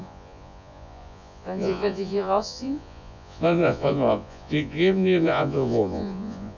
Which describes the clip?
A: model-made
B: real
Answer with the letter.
A